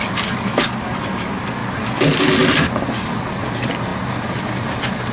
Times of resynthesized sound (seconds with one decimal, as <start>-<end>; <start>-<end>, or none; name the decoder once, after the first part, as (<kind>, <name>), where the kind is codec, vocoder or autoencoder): none